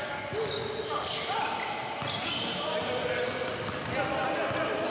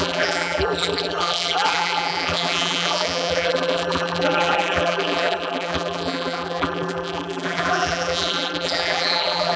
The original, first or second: first